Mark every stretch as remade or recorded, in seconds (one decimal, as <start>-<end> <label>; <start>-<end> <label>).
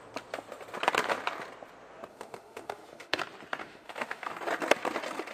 0.0-2.1 recorded; 2.1-3.2 remade; 3.2-3.6 recorded; 3.6-4.3 remade; 4.3-5.3 recorded